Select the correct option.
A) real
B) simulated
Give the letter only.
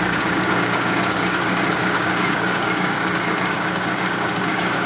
B